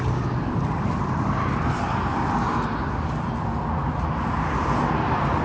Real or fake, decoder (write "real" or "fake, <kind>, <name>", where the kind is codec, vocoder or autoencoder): real